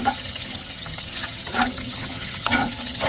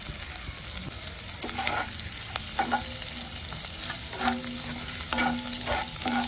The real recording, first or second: second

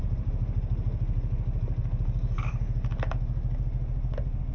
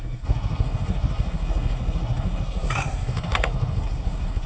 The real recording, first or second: first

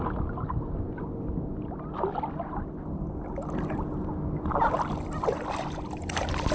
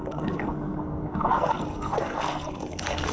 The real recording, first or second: first